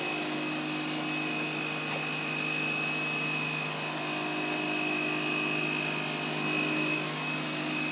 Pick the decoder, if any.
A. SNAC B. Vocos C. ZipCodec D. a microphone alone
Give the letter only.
D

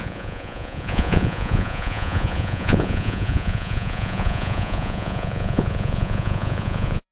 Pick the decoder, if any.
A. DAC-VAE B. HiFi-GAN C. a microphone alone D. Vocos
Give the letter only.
D